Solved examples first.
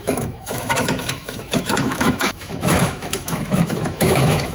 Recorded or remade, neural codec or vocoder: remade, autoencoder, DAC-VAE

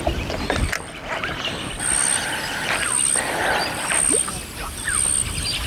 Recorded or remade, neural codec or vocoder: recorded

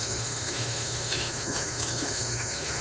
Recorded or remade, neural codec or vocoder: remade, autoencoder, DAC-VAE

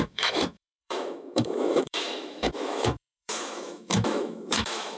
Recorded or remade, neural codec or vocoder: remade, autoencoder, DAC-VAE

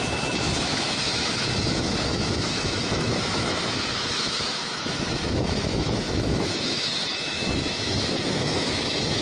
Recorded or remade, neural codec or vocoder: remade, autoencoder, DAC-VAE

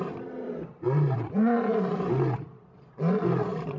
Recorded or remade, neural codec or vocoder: recorded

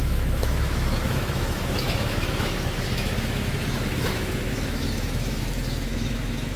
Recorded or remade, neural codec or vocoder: remade, autoencoder, DAC-VAE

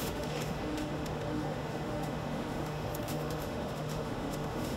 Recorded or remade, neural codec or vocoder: remade, autoencoder, DAC-VAE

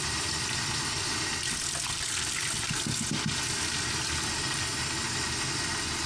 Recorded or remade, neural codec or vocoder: recorded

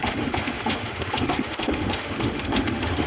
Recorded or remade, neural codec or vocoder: remade, autoencoder, DAC-VAE